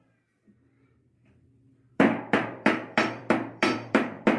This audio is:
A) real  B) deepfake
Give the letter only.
B